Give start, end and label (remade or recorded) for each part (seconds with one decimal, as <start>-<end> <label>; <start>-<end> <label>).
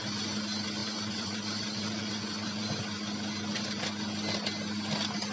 0.0-0.8 recorded; 0.8-2.7 remade; 2.7-5.3 recorded